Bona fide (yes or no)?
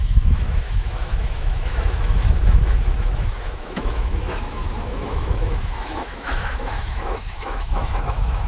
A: no